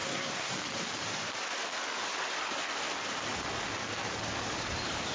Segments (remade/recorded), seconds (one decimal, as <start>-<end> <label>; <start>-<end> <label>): 0.0-0.5 remade; 0.5-5.1 recorded